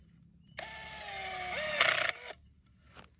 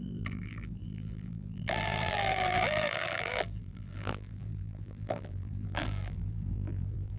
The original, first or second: first